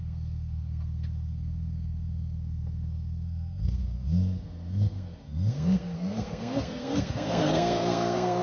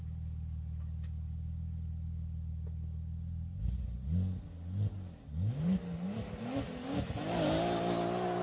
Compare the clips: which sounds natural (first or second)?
second